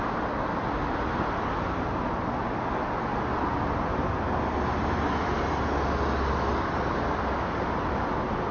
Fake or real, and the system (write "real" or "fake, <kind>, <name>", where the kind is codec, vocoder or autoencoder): real